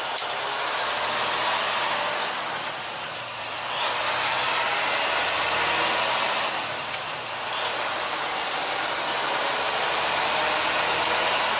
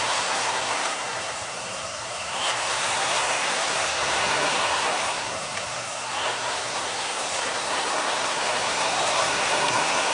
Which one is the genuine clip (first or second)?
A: first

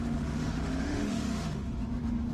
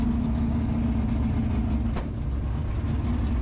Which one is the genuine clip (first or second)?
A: second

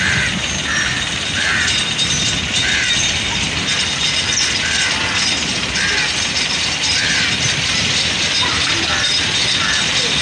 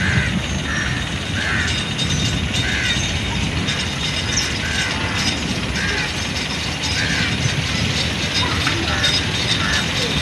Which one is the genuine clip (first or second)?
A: second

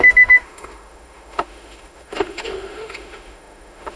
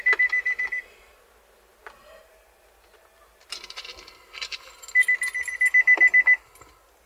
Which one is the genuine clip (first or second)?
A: second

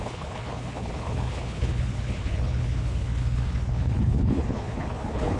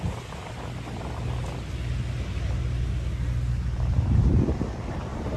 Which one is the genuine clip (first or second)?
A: second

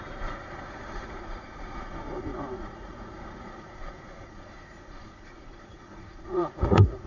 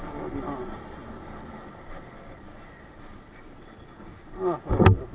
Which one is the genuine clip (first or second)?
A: second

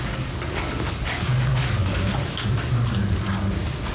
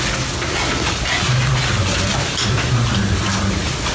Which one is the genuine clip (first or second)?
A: second